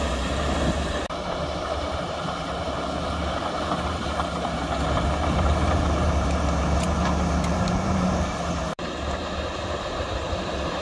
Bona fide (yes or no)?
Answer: no